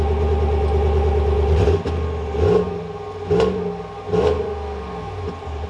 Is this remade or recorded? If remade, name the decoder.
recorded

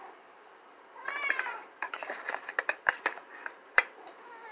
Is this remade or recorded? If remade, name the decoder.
remade, vocoder, BigVGAN v2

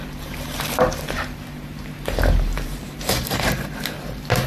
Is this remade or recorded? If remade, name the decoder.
remade, vocoder, BigVGAN v2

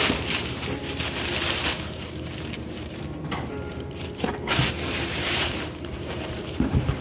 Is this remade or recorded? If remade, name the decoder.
remade, vocoder, BigVGAN v2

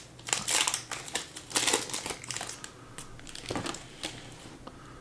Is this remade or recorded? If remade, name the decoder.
recorded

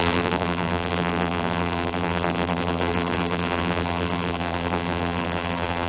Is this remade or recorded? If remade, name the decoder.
remade, vocoder, BigVGAN v2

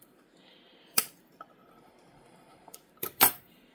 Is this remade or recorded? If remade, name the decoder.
remade, vocoder, BigVGAN v2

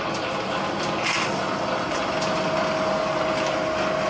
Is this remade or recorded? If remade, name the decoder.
recorded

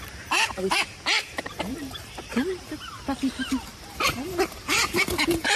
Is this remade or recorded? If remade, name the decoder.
remade, vocoder, BigVGAN v2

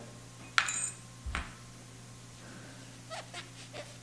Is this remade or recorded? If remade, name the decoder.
recorded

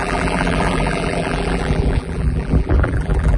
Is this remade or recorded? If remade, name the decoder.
remade, vocoder, BigVGAN v2